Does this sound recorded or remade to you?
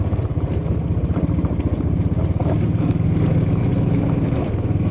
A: recorded